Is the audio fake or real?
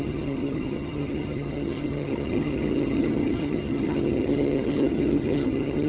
fake